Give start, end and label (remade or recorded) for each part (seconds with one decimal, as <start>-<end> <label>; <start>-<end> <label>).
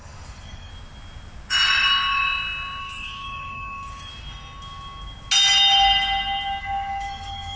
0.0-0.7 remade; 0.7-2.8 recorded; 2.8-4.1 remade; 4.1-6.6 recorded; 6.6-7.6 remade